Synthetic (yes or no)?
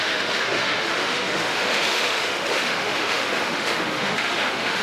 yes